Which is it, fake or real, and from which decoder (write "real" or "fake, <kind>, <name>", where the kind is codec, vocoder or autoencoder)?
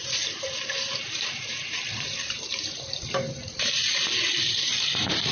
fake, vocoder, BigVGAN v2